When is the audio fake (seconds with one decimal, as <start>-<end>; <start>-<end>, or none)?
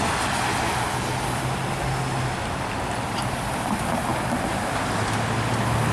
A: none